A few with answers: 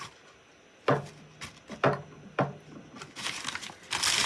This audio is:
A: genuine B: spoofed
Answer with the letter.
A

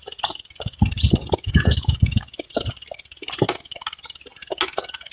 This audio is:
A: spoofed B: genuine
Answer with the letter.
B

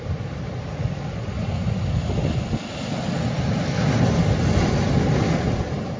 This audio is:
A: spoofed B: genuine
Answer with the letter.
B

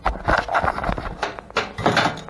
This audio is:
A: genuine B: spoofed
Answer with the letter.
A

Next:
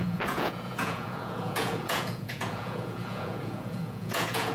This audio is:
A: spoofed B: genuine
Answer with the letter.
A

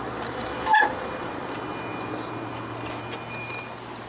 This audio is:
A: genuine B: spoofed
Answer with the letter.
A